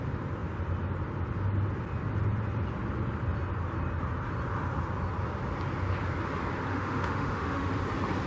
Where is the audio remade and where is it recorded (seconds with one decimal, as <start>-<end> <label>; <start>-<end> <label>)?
0.0-6.7 recorded; 6.7-7.7 remade; 7.7-8.3 recorded

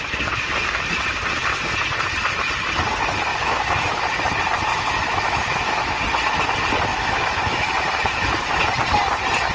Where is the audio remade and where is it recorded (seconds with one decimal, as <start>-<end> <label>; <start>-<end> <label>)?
0.0-3.3 recorded; 3.3-4.0 remade; 4.0-4.7 recorded; 4.7-6.0 remade; 6.0-6.9 recorded; 6.9-7.7 remade; 7.7-9.5 recorded